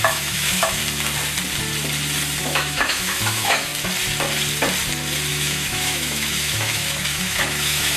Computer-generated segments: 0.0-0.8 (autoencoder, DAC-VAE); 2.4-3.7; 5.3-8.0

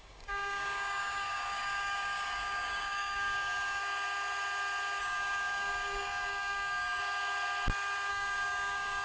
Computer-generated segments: 0.0-3.8 (codec, DAC); 5.0-7.0; 8.1-9.0

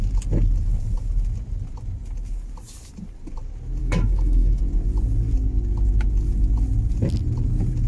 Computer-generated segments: 3.8-4.6 (autoencoder, DAC-VAE)